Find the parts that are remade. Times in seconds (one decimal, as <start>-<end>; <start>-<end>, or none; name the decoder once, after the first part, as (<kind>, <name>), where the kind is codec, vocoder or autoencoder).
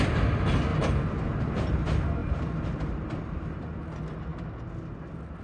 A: 0.7-1.4 (vocoder, BigVGAN v2); 2.2-3.6